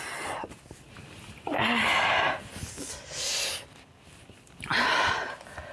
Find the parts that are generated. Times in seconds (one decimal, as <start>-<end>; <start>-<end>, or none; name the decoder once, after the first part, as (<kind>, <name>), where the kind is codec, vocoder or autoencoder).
none